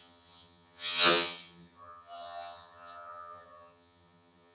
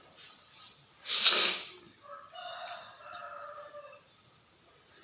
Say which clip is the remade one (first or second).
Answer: first